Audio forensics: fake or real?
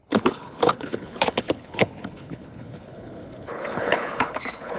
fake